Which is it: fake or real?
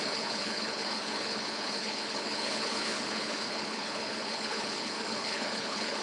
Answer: fake